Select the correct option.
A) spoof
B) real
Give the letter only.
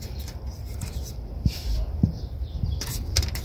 A